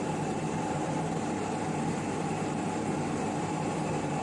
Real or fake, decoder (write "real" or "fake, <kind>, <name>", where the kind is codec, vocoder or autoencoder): fake, vocoder, BigVGAN v2